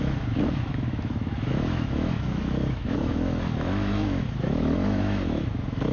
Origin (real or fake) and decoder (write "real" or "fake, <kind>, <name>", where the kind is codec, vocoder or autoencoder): fake, autoencoder, DAC-VAE